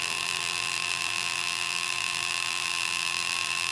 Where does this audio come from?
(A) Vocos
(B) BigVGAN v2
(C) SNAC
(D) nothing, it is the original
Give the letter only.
B